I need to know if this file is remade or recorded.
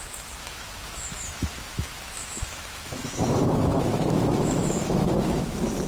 remade